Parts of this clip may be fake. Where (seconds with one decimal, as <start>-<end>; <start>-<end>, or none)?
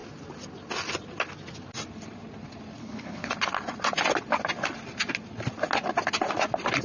2.8-3.3